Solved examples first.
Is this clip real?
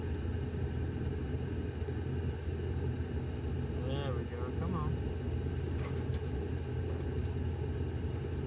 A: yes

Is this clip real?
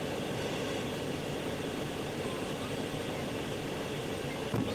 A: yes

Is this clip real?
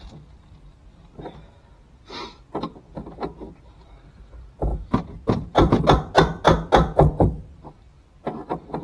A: yes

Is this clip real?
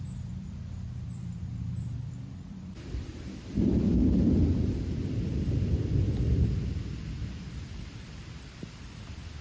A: no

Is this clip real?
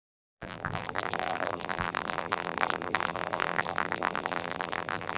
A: no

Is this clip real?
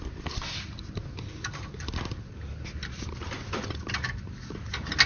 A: no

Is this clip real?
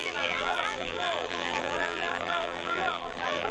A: no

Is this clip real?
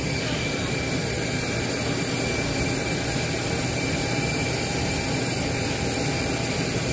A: no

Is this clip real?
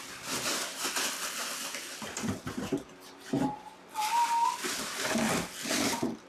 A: yes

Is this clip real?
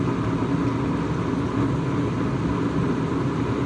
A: yes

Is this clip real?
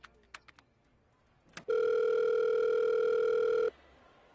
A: yes